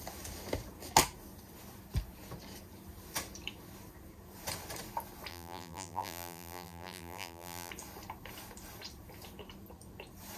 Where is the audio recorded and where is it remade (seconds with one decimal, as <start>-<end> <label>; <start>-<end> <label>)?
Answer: 0.0-5.3 recorded; 5.3-7.7 remade; 7.7-10.4 recorded